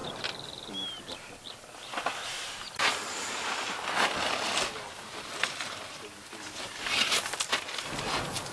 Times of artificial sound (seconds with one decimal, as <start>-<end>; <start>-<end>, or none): 0.0-8.5